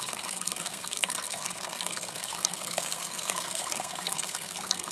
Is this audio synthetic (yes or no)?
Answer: yes